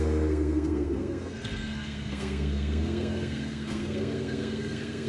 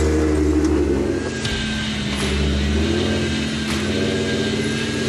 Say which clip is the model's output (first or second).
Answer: first